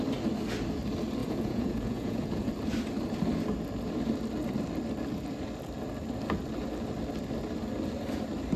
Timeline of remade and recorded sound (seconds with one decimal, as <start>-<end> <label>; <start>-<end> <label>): 0.0-1.2 recorded; 1.2-2.5 remade; 2.5-8.6 recorded

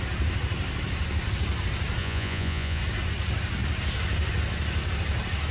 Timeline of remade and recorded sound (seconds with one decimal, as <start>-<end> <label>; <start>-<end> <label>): 0.0-2.0 recorded; 2.0-2.8 remade; 2.8-5.5 recorded

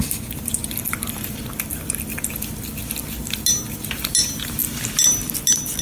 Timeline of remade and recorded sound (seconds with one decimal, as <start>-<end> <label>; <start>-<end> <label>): 0.0-5.8 recorded

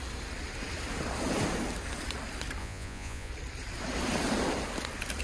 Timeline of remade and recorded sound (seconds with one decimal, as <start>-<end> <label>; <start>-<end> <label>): 0.0-2.6 recorded; 2.6-3.3 remade; 3.3-5.2 recorded

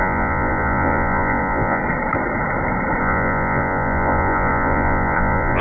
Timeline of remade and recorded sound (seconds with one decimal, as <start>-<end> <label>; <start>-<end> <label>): 0.0-1.8 remade; 1.8-3.0 recorded; 3.0-5.6 remade

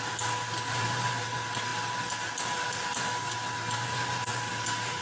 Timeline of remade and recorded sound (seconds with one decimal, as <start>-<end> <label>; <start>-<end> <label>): 0.0-5.0 recorded